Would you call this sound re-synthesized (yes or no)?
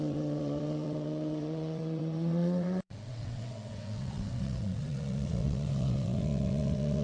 yes